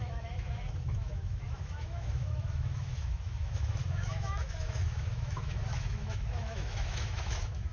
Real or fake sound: fake